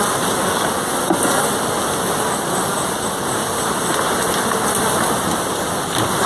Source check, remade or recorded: recorded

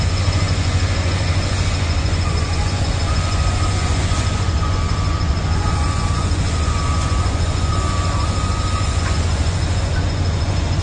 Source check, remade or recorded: remade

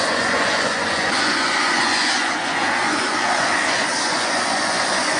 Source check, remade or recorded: remade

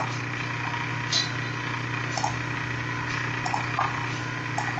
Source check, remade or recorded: recorded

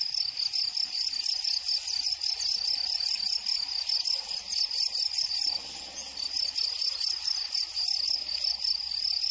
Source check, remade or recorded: recorded